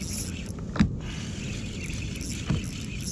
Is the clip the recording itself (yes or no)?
yes